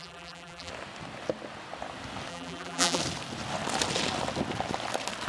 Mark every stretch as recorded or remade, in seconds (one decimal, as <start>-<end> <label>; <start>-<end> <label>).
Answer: 0.0-0.7 remade; 0.7-2.3 recorded; 2.3-3.0 remade; 3.0-5.3 recorded